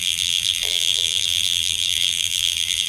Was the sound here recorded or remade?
remade